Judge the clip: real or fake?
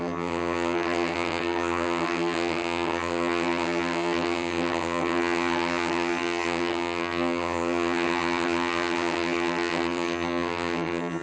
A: fake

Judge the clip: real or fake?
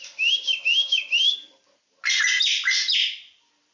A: real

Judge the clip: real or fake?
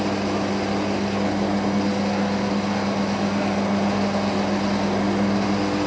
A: real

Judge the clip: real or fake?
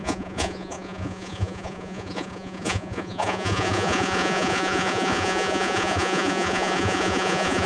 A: fake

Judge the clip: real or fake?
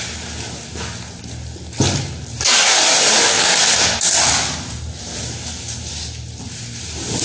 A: real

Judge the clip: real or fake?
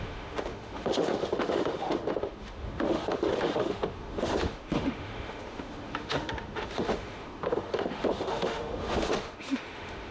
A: fake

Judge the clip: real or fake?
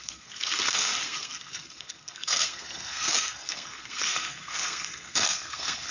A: fake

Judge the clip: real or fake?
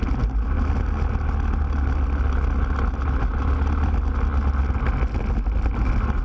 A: real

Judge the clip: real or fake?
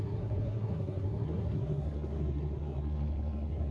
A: fake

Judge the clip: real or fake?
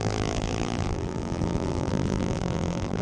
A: fake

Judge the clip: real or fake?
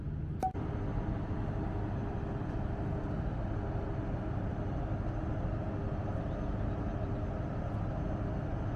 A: real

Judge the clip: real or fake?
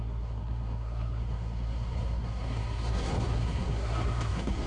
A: fake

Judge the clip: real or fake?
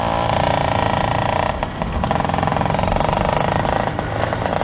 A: real